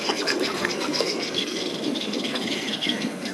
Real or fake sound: fake